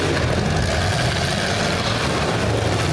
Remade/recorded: recorded